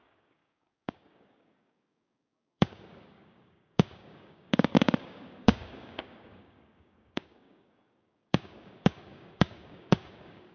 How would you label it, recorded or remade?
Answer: remade